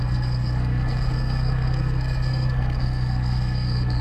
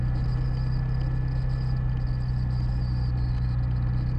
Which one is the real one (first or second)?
second